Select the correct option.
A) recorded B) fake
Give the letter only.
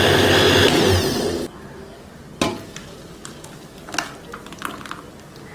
A